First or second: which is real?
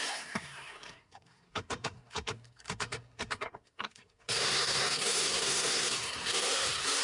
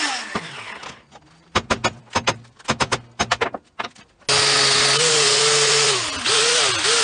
second